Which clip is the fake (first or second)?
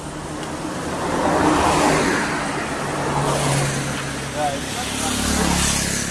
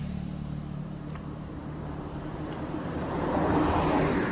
second